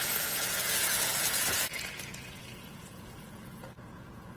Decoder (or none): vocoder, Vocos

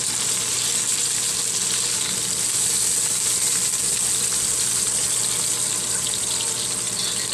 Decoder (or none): none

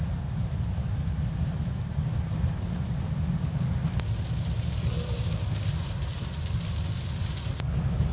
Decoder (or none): none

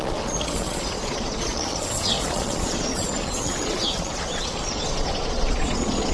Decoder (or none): vocoder, Vocos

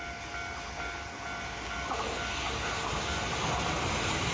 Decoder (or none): none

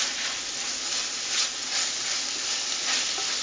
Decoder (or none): none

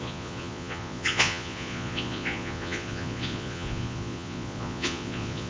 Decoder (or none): vocoder, Vocos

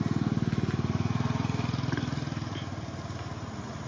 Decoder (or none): none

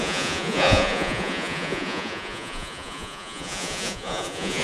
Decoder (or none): vocoder, Vocos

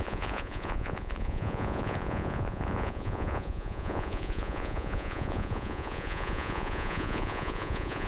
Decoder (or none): vocoder, Vocos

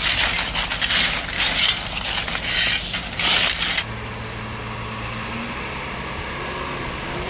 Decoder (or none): none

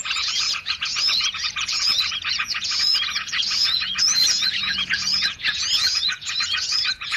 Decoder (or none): vocoder, Vocos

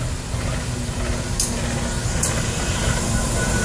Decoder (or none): none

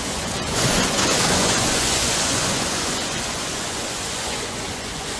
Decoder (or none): vocoder, Vocos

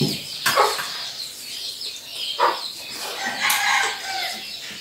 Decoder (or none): none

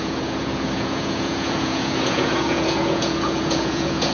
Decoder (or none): vocoder, Vocos